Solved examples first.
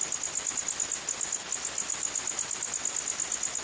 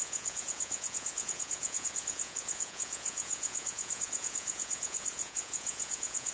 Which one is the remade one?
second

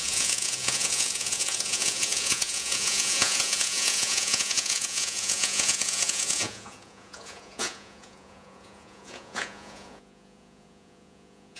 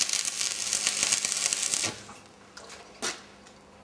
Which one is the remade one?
first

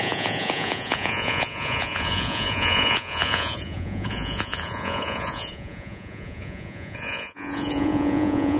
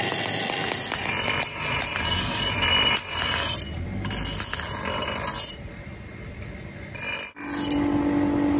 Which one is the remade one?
first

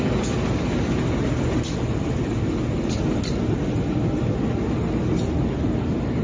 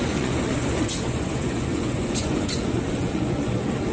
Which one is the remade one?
second